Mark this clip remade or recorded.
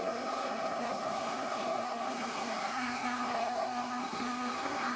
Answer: remade